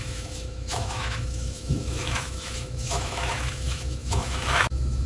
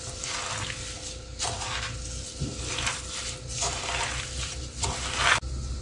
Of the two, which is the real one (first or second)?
second